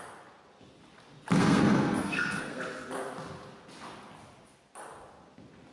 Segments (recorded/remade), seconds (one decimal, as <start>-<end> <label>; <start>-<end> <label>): 0.0-1.4 recorded; 1.4-2.6 remade; 2.6-5.7 recorded

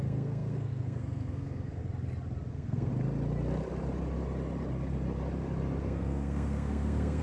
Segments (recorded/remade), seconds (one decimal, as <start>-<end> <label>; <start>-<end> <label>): 0.0-1.8 remade; 1.8-2.5 recorded; 2.5-2.9 remade; 2.9-5.8 recorded; 5.8-7.2 remade

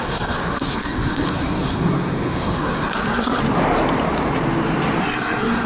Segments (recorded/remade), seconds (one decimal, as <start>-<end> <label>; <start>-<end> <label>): 0.0-3.4 remade; 3.4-5.0 recorded; 5.0-5.7 remade

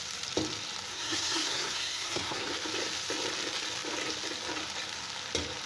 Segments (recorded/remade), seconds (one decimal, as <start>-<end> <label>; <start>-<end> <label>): 0.0-0.9 recorded; 0.9-2.5 remade; 2.5-5.7 recorded

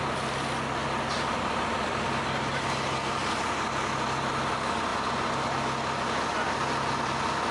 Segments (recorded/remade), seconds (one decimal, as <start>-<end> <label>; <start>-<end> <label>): 0.0-7.5 recorded

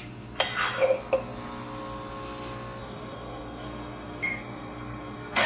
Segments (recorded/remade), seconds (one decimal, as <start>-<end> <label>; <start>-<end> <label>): 0.0-2.8 recorded; 2.8-5.5 remade